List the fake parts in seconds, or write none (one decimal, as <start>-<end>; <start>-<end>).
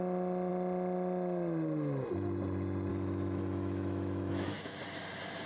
2.9-4.8